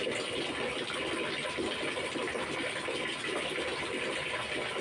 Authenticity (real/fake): real